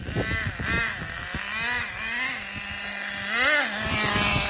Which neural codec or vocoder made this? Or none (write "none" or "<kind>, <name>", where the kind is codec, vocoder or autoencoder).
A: none